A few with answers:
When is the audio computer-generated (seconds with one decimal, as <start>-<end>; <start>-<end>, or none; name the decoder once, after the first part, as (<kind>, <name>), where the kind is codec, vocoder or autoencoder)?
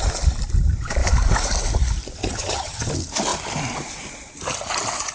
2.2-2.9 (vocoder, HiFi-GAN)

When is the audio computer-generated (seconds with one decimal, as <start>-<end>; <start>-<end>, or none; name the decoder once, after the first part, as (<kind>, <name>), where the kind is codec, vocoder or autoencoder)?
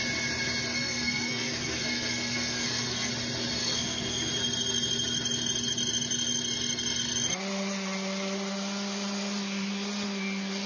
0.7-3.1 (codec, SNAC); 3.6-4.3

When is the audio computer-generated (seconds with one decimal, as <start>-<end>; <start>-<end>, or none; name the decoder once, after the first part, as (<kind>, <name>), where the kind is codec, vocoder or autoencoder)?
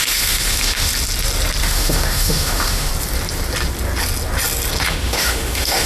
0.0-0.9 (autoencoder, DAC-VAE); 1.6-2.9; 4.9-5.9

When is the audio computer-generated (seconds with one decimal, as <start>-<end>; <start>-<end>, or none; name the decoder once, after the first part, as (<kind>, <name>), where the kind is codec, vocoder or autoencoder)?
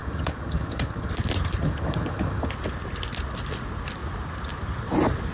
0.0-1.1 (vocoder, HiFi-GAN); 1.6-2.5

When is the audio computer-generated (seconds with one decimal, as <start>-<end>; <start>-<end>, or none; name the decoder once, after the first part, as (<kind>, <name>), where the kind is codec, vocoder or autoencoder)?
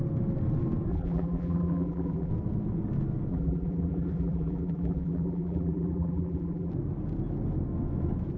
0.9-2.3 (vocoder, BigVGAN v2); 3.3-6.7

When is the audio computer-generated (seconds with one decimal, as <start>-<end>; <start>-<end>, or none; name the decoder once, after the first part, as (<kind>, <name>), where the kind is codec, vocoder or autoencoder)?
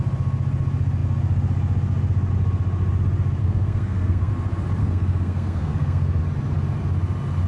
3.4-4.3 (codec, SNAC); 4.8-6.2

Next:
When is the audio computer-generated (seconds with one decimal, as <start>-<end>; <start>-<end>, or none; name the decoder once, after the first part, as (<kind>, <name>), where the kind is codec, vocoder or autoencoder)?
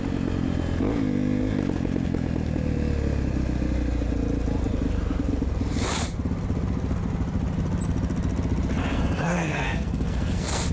8.8-10.7 (codec, SNAC)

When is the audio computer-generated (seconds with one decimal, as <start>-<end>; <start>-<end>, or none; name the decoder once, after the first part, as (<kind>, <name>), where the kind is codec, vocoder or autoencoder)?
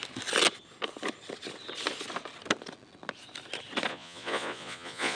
3.9-5.2 (vocoder, Vocos)